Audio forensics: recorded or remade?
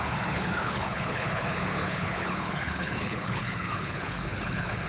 remade